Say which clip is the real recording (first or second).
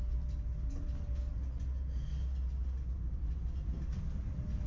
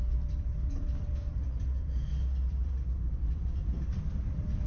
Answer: first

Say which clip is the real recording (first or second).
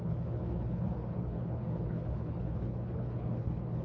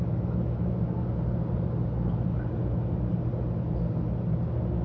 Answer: second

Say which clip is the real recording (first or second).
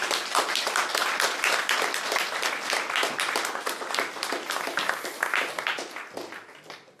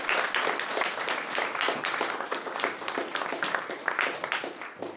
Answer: first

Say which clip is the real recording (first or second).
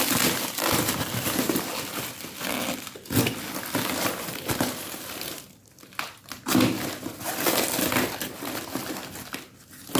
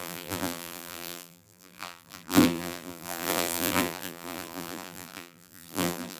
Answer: first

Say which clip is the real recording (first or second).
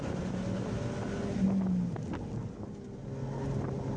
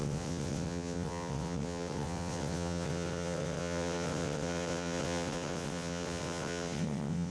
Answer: first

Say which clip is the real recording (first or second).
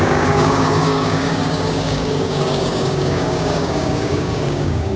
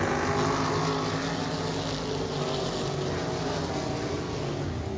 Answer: second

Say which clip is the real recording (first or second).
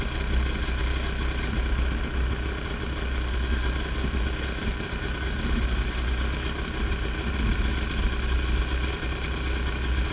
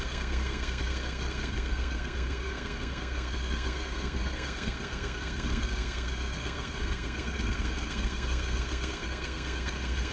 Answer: first